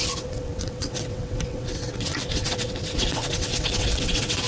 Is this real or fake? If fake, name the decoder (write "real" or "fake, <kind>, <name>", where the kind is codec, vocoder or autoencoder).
fake, vocoder, WaveNeXt